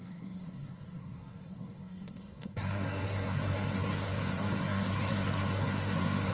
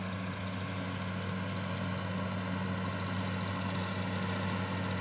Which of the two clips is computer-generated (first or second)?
first